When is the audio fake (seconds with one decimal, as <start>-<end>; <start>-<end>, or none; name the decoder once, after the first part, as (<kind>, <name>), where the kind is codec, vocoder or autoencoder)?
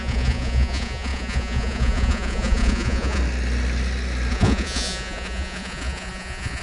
0.0-3.2 (vocoder, Vocos); 4.3-6.6